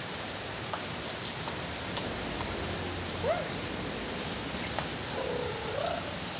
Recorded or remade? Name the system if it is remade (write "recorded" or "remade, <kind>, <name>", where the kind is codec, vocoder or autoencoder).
recorded